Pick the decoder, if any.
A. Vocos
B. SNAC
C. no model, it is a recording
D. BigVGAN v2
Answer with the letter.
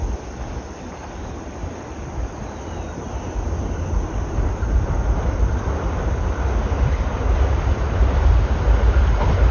C